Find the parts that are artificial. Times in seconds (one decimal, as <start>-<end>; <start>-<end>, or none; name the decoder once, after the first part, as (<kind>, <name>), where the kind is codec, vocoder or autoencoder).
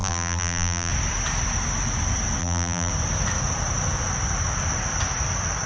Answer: 0.0-0.9 (vocoder, BigVGAN v2); 2.4-2.9